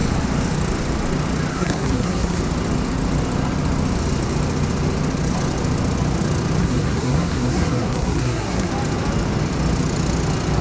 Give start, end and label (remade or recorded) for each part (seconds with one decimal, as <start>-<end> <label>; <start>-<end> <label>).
0.0-1.5 recorded; 1.5-2.4 remade; 2.4-6.6 recorded; 6.6-8.7 remade; 8.7-10.6 recorded